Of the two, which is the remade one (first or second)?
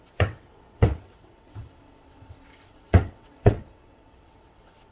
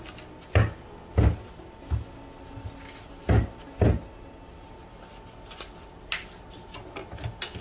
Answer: first